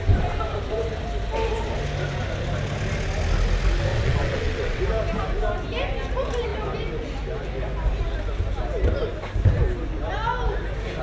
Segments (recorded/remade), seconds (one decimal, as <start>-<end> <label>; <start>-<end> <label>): 0.0-3.9 recorded; 3.9-4.8 remade; 4.8-11.0 recorded